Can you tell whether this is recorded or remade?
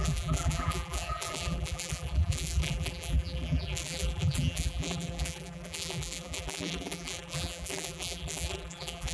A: remade